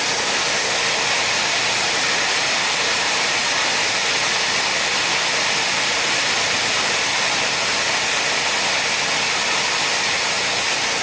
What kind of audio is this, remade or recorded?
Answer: recorded